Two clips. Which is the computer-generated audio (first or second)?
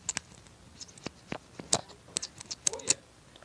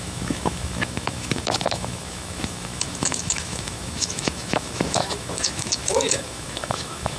second